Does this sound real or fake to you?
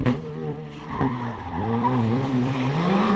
fake